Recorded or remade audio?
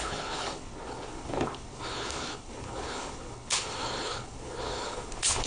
remade